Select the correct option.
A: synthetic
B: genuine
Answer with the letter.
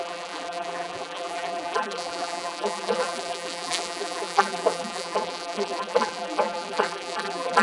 A